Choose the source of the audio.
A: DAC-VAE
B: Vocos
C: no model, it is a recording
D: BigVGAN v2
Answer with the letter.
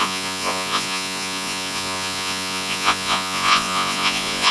B